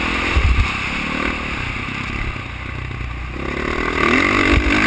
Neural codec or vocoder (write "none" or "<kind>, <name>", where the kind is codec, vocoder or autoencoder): none